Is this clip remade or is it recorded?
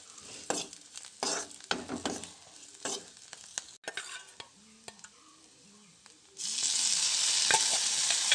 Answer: recorded